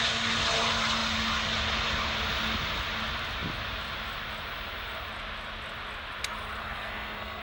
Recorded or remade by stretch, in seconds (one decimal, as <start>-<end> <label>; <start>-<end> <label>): 0.0-6.6 recorded; 6.6-7.4 remade